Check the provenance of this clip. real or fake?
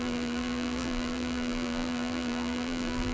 fake